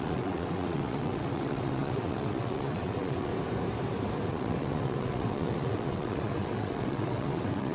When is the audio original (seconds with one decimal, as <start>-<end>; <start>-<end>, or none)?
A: 3.3-4.3